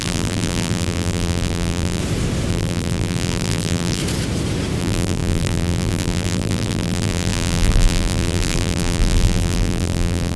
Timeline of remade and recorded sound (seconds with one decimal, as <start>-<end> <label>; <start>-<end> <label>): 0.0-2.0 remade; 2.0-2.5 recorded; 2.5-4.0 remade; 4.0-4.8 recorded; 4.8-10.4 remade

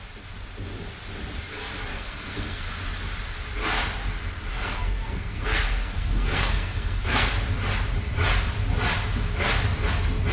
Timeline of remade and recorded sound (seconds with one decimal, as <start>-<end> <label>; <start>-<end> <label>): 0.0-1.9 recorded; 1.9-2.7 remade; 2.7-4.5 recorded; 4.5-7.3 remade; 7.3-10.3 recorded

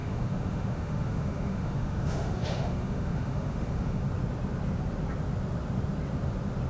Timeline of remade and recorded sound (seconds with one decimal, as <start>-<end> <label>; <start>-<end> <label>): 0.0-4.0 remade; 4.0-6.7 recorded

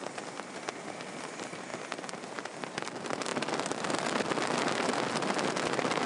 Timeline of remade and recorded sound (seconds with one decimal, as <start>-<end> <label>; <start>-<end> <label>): 0.0-6.1 recorded

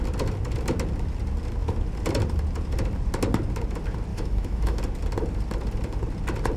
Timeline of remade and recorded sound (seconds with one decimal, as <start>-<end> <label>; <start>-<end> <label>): 0.0-4.1 recorded; 4.1-4.8 remade; 4.8-6.6 recorded

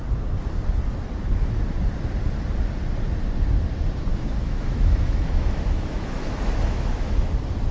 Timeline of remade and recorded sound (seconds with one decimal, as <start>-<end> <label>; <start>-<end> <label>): 0.0-4.1 recorded; 4.1-7.3 remade; 7.3-7.7 recorded

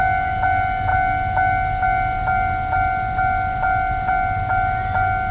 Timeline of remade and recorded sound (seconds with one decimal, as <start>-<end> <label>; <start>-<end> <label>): 0.0-5.3 recorded

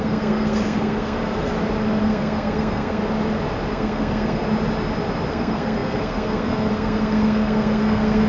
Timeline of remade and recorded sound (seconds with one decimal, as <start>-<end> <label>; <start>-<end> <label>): 0.0-1.5 remade; 1.5-2.0 recorded; 2.0-3.0 remade; 3.0-3.7 recorded; 3.7-4.4 remade; 4.4-5.3 recorded; 5.3-8.3 remade